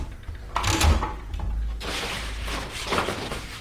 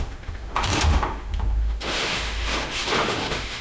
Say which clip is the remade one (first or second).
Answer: second